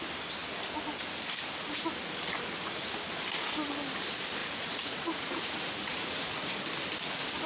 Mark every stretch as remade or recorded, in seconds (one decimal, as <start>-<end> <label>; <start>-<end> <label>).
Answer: 0.0-4.4 recorded; 4.4-6.5 remade; 6.5-7.5 recorded